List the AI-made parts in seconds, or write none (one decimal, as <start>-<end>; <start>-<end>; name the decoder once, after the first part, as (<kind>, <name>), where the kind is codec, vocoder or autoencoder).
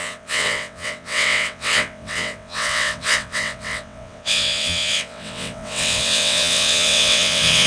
0.0-7.7 (vocoder, WaveNeXt)